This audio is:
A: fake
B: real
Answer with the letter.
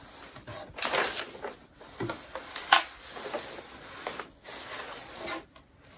B